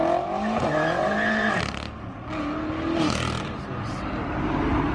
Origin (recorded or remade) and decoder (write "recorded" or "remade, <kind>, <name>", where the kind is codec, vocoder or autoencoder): recorded